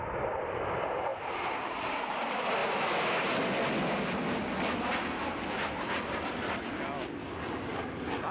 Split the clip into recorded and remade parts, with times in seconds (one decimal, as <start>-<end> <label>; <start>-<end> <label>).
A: 0.0-1.1 recorded; 1.1-2.0 remade; 2.0-8.3 recorded